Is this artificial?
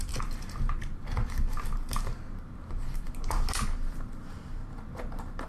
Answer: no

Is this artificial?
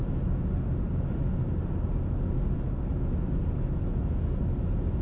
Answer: no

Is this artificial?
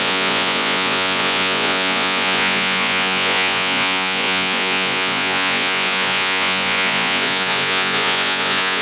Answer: yes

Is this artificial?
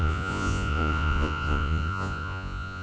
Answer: yes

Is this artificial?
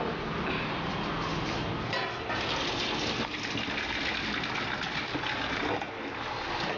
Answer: no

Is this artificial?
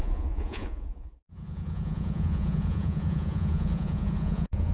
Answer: yes